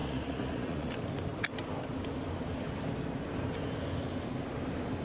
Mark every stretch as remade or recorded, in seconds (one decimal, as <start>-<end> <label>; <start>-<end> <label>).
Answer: 0.0-0.9 remade; 0.9-5.0 recorded